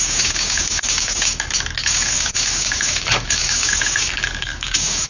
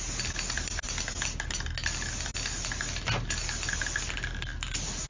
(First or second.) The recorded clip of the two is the second